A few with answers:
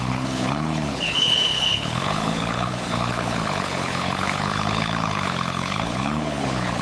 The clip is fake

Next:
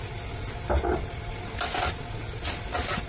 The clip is real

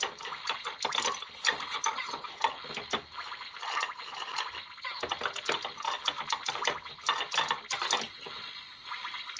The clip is real